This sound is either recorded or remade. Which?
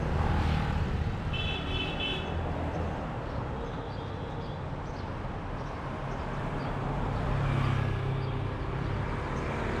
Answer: recorded